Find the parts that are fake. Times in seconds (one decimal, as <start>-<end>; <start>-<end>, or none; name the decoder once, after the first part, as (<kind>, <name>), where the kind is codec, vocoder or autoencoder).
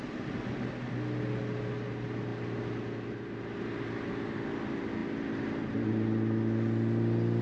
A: none